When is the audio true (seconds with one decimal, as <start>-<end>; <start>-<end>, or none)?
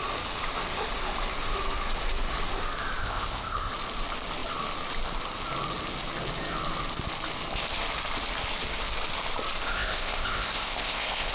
0.0-3.0; 3.7-9.7